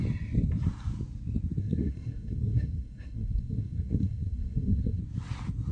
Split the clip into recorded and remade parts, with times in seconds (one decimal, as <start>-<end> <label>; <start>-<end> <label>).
0.0-1.6 recorded; 1.6-5.0 remade; 5.0-5.7 recorded